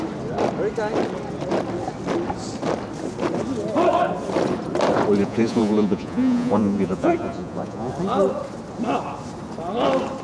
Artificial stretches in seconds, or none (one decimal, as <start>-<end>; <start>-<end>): 5.2-7.9